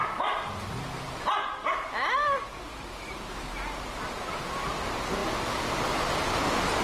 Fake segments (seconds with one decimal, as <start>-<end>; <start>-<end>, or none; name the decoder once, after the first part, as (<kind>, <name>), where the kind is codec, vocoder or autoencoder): 2.7-3.5 (autoencoder, DAC-VAE)